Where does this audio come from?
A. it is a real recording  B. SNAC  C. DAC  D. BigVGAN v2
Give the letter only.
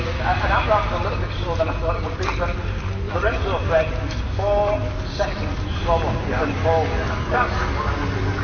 A